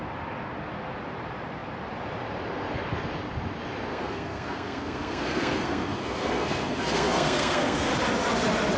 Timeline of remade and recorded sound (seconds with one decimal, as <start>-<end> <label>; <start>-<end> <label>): 0.0-3.9 recorded; 3.9-7.9 remade; 7.9-8.8 recorded